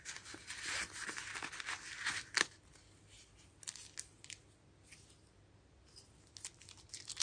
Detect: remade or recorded recorded